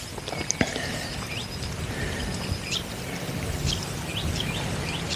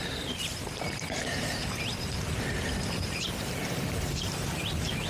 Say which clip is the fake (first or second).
second